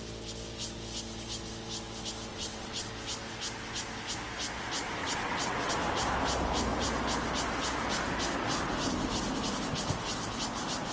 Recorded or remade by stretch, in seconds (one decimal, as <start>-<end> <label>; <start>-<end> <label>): 0.0-2.3 recorded; 2.3-2.9 remade; 2.9-5.0 recorded; 5.0-5.7 remade; 5.7-10.9 recorded